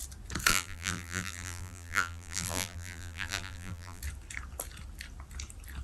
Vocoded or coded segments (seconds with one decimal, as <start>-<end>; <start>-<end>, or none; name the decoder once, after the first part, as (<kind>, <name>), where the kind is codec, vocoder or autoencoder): 0.5-4.0 (vocoder, BigVGAN v2)